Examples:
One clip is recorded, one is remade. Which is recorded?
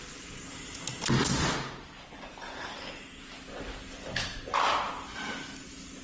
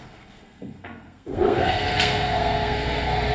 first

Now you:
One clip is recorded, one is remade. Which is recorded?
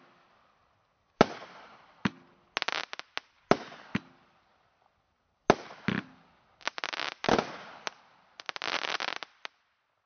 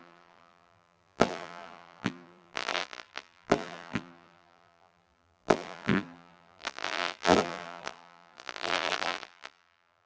first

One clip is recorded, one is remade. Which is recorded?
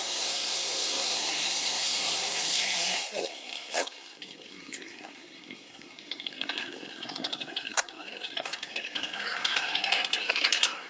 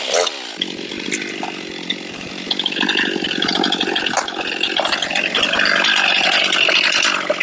second